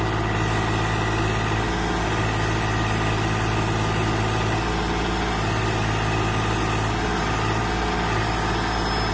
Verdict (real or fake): real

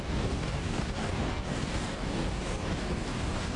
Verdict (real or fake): fake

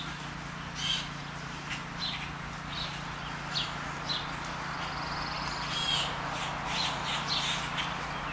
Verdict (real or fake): real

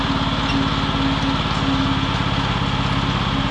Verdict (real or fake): real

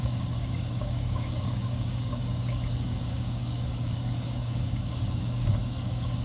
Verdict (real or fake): fake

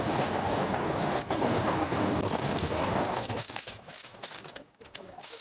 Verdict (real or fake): fake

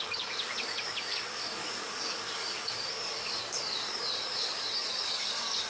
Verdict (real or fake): fake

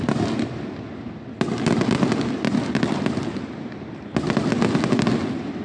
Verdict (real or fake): real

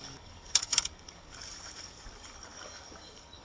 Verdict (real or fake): fake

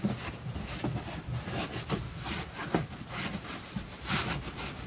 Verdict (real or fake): real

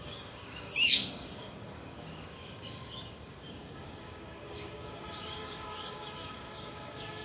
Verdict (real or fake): fake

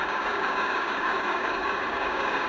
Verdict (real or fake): fake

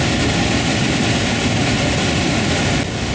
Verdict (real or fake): real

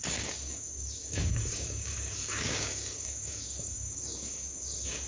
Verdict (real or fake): fake